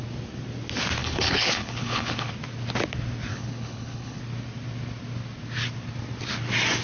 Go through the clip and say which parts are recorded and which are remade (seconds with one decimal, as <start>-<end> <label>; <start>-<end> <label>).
0.0-1.0 recorded; 1.0-2.3 remade; 2.3-3.3 recorded; 3.3-4.2 remade; 4.2-6.8 recorded